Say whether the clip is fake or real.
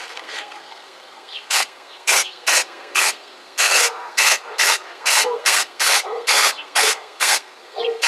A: fake